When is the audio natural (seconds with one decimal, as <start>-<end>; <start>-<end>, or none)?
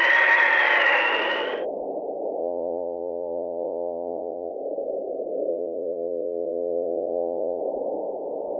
0.0-2.4; 4.5-5.5; 7.6-8.6